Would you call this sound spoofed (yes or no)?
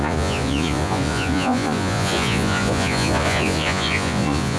yes